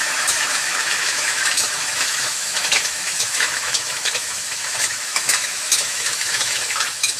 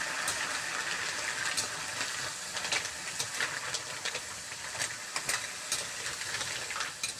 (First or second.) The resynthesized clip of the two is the first